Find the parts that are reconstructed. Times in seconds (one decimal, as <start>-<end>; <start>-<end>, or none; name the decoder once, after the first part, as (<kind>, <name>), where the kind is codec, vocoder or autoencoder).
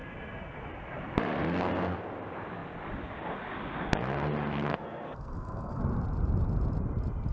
4.7-5.8 (codec, SNAC)